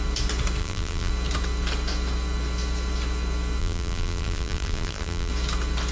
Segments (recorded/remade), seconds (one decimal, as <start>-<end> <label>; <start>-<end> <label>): 0.0-0.6 recorded; 0.6-1.1 remade; 1.1-3.6 recorded; 3.6-5.3 remade; 5.3-5.9 recorded